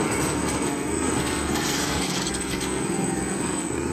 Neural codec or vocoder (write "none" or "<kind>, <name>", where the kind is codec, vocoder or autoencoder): codec, SNAC